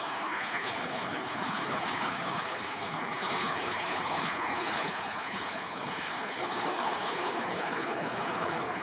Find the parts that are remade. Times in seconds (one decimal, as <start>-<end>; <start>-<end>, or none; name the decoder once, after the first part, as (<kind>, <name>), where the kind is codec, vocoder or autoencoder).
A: 0.0-8.8 (codec, HILCodec)